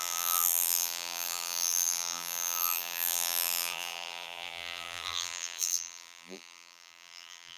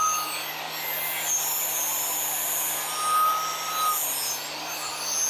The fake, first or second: first